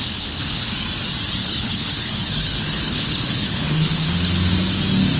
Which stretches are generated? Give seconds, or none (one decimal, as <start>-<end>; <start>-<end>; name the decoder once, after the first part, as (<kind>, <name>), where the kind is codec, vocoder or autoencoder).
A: 0.0-0.7 (codec, HILCodec); 1.4-4.5